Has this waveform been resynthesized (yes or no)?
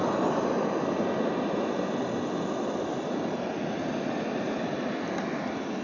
no